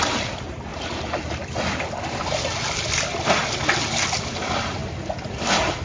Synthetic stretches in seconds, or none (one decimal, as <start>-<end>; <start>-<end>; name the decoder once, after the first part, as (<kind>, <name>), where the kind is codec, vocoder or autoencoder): none

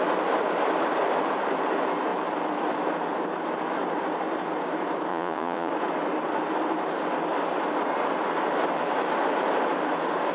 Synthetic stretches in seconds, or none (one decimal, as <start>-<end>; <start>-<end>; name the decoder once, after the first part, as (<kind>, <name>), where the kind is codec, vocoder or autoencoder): 5.1-5.7 (vocoder, Vocos)

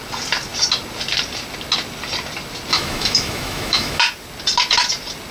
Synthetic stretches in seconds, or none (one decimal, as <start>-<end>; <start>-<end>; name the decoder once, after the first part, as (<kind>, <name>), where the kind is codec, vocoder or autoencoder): 2.7-4.0 (autoencoder, DAC-VAE)

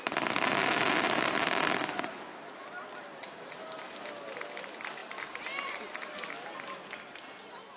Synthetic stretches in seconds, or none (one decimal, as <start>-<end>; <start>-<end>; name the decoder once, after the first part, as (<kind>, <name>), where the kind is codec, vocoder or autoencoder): none